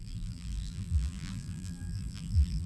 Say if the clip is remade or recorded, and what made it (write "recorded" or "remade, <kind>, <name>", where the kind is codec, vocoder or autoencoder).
remade, vocoder, BigVGAN v2